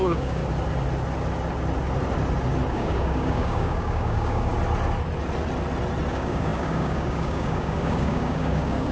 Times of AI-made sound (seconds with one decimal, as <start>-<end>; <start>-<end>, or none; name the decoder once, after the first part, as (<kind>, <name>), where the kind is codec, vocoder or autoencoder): 0.0-0.4 (codec, DAC); 2.7-4.5; 6.1-8.9